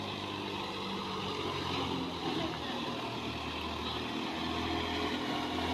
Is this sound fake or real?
real